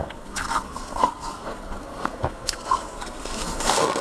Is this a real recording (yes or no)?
no